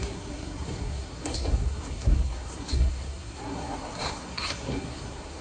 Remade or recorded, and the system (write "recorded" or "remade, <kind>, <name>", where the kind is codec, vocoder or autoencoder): remade, codec, SNAC